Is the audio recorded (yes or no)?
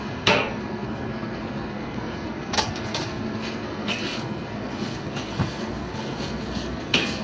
no